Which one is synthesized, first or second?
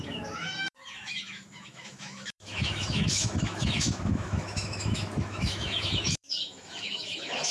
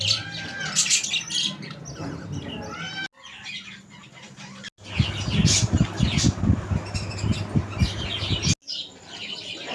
first